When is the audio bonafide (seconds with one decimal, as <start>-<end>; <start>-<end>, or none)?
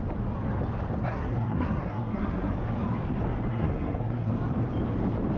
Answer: 0.0-1.0; 2.5-3.5; 4.3-5.4